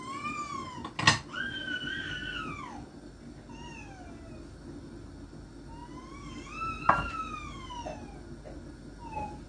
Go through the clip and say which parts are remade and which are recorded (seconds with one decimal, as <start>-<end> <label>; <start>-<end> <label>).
0.0-9.5 recorded